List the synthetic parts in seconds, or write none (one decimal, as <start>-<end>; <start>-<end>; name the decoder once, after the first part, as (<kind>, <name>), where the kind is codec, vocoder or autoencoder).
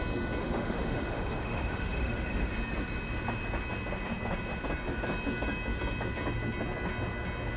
0.4-2.5 (autoencoder, DAC-VAE)